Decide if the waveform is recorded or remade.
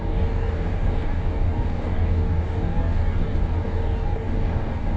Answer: remade